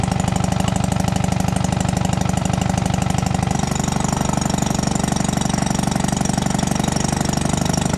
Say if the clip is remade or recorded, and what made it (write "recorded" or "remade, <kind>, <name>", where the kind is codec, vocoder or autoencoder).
recorded